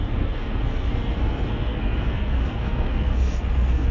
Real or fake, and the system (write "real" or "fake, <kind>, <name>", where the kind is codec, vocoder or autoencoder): fake, codec, SNAC